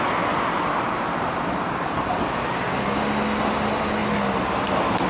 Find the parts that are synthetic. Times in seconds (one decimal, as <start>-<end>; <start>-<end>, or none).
none